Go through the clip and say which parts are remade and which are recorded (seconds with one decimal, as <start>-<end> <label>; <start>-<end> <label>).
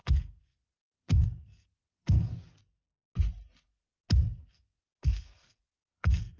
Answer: 0.0-2.3 remade; 2.3-4.5 recorded; 4.5-6.4 remade